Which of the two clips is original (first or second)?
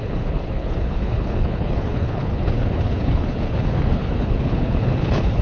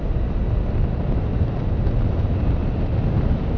second